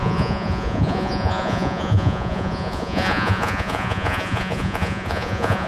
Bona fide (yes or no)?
no